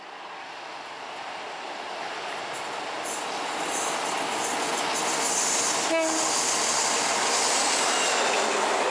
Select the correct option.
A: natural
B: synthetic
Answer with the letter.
A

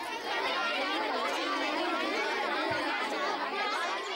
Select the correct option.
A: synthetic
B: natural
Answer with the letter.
B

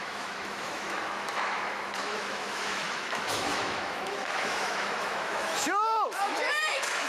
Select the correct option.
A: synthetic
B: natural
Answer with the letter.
A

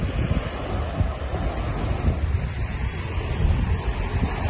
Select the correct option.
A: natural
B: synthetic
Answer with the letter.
A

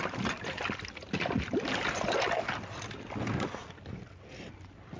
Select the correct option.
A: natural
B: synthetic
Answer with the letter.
A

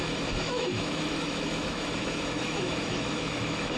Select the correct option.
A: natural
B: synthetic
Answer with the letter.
B